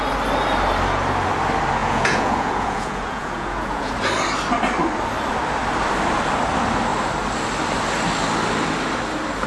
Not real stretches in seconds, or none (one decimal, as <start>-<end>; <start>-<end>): 1.8-3.9